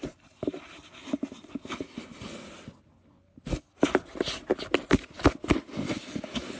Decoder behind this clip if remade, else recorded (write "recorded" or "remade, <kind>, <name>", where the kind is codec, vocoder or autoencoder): recorded